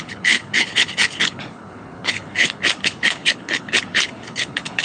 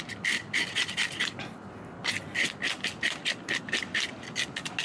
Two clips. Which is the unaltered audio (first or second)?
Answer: second